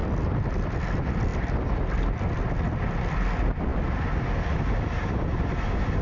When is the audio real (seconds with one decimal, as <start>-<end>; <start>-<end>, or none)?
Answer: 0.0-6.0